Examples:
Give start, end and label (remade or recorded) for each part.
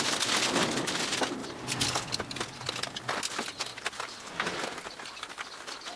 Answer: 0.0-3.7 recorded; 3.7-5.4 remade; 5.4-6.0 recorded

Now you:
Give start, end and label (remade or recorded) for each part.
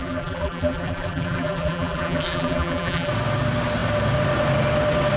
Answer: 0.0-3.1 remade; 3.1-5.2 recorded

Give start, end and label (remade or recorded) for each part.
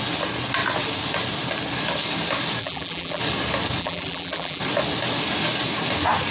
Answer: 0.0-2.6 recorded; 2.6-3.2 remade; 3.2-3.8 recorded; 3.8-4.6 remade; 4.6-6.3 recorded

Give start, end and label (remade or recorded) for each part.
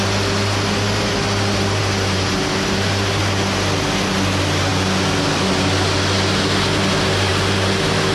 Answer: 0.0-1.8 recorded; 1.8-3.2 remade; 3.2-8.1 recorded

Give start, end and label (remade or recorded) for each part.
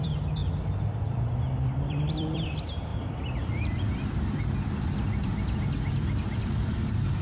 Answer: 0.0-7.2 remade